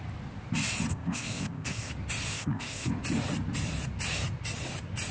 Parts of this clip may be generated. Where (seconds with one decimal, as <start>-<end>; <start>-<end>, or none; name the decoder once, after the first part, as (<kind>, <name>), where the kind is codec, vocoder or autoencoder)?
0.9-1.9 (codec, ZipCodec); 2.3-2.9